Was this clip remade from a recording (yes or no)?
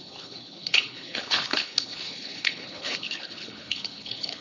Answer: yes